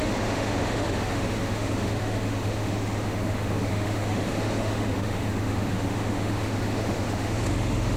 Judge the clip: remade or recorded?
remade